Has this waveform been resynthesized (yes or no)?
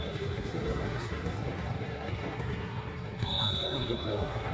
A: yes